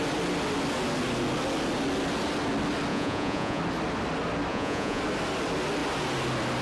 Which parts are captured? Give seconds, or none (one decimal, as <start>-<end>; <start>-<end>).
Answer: 0.0-2.9; 3.6-4.5; 5.0-6.6